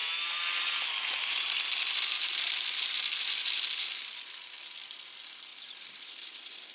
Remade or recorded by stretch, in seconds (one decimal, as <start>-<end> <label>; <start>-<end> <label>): 0.0-6.7 recorded